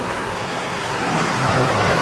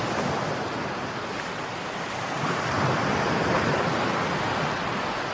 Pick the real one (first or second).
second